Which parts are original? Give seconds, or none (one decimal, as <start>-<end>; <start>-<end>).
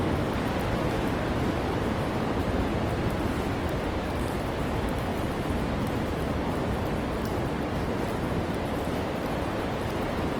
0.0-2.4